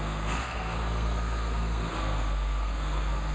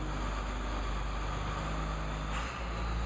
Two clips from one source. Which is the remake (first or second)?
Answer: first